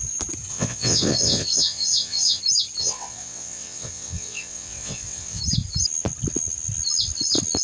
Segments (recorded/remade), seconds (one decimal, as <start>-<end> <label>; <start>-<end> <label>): 0.0-0.5 recorded; 0.5-2.4 remade; 2.4-2.8 recorded; 2.8-5.4 remade; 5.4-7.6 recorded